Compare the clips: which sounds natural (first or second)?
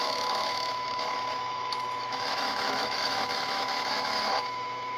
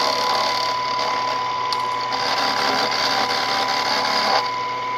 second